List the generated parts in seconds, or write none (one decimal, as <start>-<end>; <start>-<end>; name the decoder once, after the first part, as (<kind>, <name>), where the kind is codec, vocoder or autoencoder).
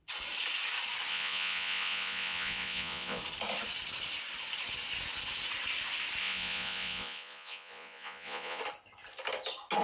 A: 1.1-3.2 (vocoder, Vocos); 6.2-8.6